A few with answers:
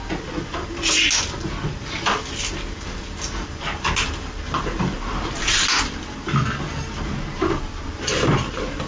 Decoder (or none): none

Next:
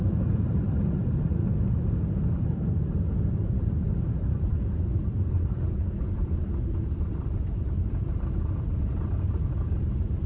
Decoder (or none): vocoder, BigVGAN v2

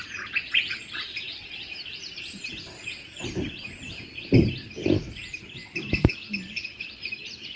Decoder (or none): vocoder, BigVGAN v2